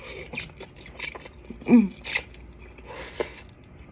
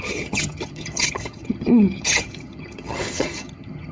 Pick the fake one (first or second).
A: second